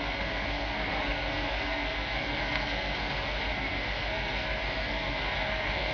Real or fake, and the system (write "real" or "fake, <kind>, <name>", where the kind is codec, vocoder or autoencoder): fake, codec, SNAC